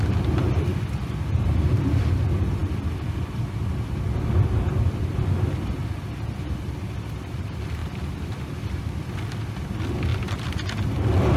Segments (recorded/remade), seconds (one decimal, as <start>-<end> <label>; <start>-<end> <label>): 0.0-11.4 recorded